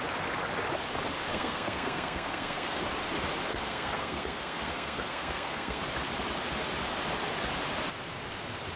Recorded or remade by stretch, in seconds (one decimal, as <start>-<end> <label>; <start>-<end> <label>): 0.0-1.3 recorded; 1.3-2.8 remade; 2.8-3.5 recorded; 3.5-5.8 remade; 5.8-8.8 recorded

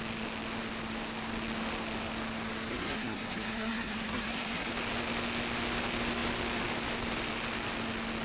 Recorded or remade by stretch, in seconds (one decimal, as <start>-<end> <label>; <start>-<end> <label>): 0.0-2.7 recorded; 2.7-4.7 remade; 4.7-8.2 recorded